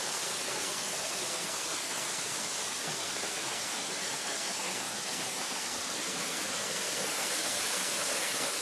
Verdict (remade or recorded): remade